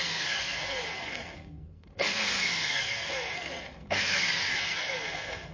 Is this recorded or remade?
remade